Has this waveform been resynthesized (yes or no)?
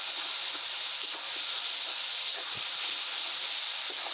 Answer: no